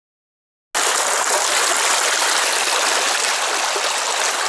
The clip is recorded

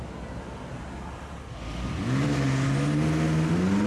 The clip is recorded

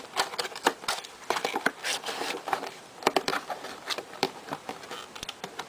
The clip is remade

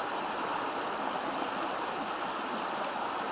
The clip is recorded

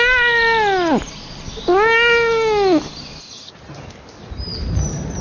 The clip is recorded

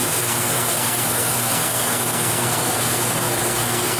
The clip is remade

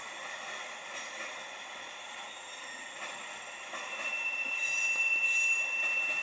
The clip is recorded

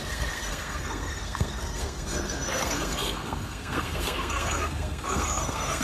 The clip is remade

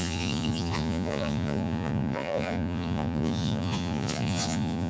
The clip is remade